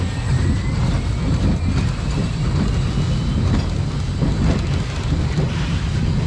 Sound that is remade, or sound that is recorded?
recorded